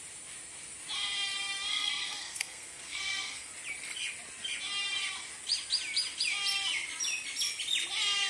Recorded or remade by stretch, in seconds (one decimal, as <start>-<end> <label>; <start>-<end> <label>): 0.0-1.7 recorded; 1.7-3.5 remade; 3.5-8.3 recorded